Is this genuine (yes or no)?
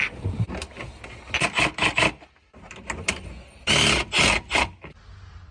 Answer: yes